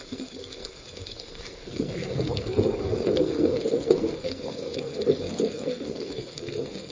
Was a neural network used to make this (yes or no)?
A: yes